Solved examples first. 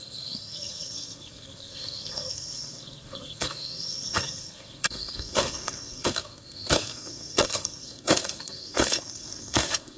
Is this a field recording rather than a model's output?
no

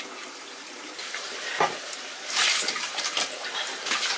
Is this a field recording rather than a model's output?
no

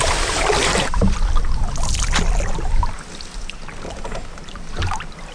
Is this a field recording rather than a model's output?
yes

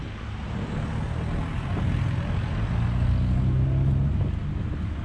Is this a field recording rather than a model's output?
yes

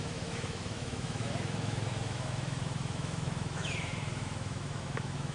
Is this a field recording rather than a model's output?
no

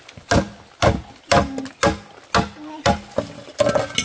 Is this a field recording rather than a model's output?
yes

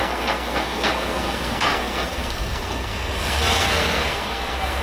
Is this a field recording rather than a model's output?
no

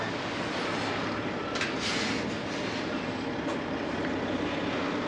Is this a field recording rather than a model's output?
yes